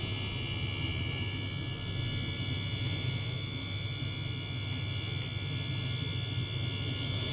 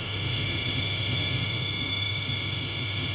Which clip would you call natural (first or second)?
first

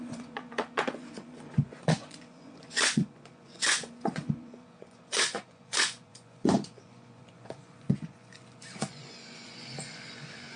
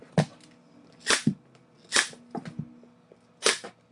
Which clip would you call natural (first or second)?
second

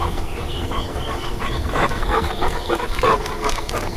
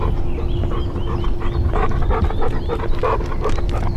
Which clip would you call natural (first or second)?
second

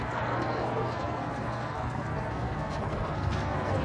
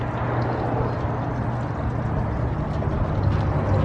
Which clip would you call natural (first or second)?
second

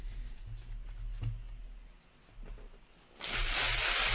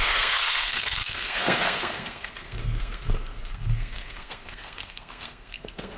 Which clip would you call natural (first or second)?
first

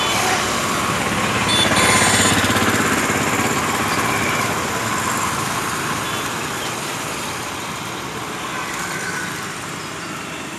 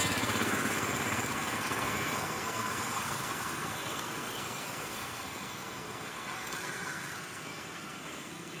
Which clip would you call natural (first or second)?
first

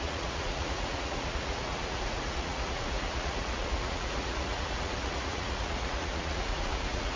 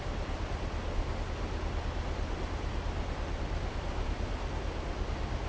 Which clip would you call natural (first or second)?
second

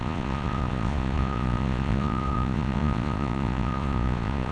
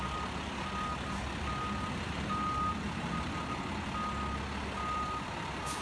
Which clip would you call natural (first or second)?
second